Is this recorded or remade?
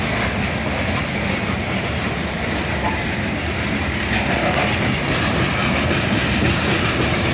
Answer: recorded